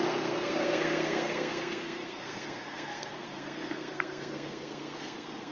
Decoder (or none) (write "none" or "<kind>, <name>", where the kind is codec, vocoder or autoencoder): codec, SNAC